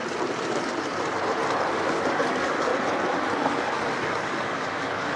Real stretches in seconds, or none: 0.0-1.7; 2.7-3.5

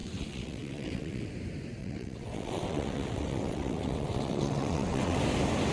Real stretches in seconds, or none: 1.3-1.8; 5.2-5.7

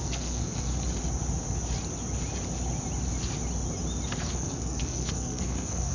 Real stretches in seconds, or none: 0.7-4.2

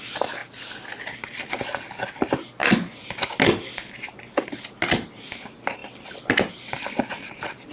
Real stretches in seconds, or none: 0.0-7.7

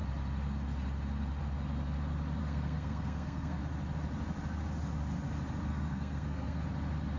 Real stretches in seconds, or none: 0.0-2.4; 3.6-5.7; 6.6-7.2